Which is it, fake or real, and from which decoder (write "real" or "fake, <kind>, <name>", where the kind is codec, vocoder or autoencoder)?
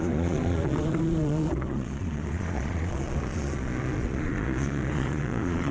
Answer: fake, vocoder, Vocos